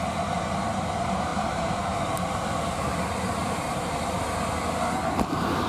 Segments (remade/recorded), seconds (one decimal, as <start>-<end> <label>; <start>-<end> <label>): 0.0-1.3 recorded; 1.3-3.0 remade; 3.0-3.4 recorded; 3.4-4.0 remade; 4.0-5.7 recorded